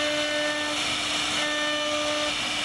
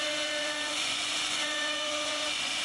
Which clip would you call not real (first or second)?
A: second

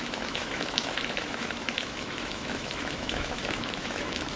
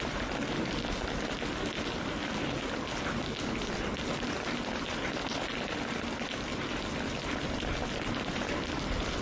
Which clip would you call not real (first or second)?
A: first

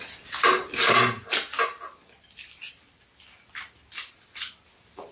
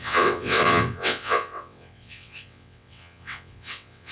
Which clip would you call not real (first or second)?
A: second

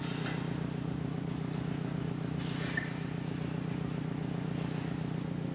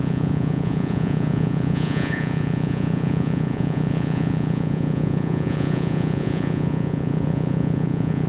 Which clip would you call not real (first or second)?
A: second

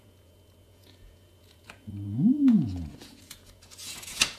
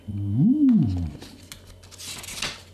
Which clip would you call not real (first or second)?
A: first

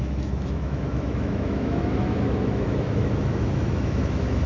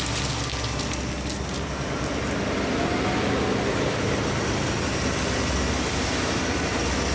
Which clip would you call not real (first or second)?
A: first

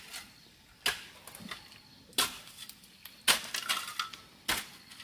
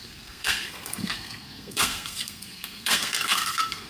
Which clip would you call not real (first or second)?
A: second